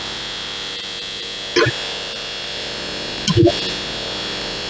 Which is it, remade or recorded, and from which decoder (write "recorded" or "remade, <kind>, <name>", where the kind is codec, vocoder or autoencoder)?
recorded